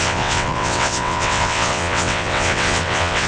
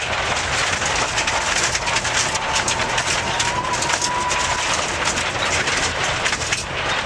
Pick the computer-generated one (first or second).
first